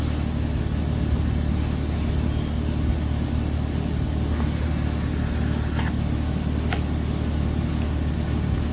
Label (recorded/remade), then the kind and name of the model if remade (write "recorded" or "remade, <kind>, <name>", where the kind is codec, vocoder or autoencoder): recorded